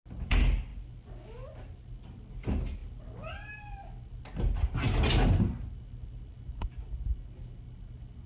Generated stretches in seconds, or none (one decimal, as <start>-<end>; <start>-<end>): none